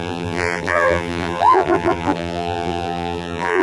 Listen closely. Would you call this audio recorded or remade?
remade